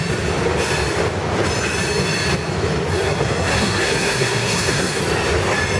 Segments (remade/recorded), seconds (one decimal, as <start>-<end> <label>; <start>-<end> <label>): 0.0-2.9 recorded; 2.9-5.0 remade; 5.0-5.8 recorded